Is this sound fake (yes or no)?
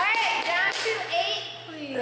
no